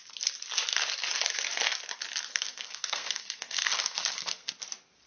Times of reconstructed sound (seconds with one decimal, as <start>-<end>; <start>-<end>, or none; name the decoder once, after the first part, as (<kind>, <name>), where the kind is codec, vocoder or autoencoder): 2.3-4.5 (codec, SNAC)